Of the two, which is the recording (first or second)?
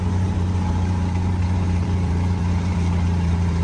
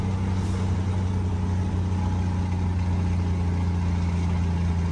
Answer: second